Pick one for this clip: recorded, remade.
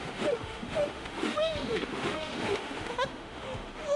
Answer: remade